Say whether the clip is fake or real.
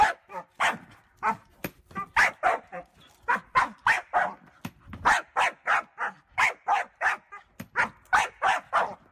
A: real